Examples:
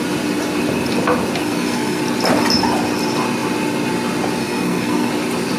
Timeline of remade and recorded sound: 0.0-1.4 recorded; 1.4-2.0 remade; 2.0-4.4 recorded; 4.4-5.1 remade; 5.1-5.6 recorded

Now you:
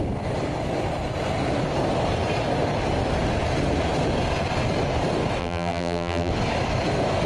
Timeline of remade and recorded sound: 0.0-5.4 recorded; 5.4-6.3 remade; 6.3-7.3 recorded